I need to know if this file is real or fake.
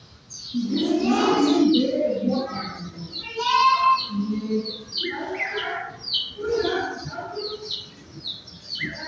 real